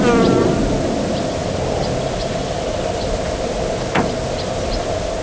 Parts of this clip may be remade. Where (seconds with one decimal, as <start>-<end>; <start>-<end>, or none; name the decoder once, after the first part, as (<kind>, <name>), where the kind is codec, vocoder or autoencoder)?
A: none